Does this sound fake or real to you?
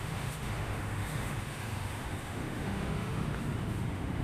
fake